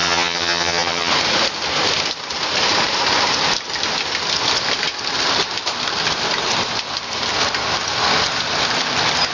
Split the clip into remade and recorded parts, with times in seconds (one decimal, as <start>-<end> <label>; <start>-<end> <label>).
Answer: 0.0-1.1 remade; 1.1-9.3 recorded